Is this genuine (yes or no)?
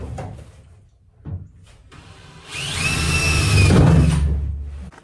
yes